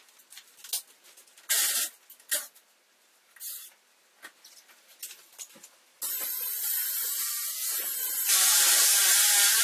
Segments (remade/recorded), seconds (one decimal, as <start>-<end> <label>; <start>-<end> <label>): 0.0-9.6 recorded